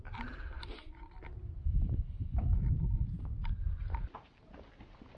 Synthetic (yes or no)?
no